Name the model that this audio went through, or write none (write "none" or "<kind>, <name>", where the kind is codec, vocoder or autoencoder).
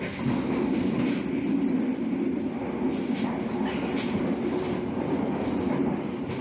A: none